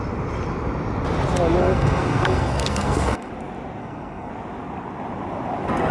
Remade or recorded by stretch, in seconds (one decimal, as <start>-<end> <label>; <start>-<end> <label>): 0.0-1.6 recorded; 1.6-3.3 remade; 3.3-3.8 recorded; 3.8-4.3 remade; 4.3-5.9 recorded